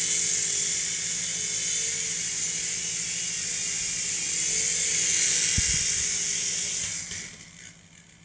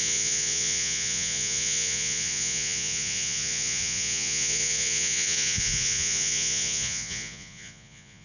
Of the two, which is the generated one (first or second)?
second